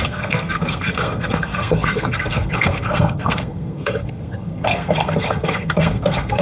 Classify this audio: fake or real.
fake